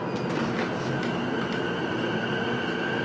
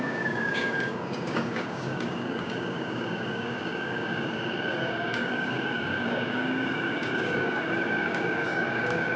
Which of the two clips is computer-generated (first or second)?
second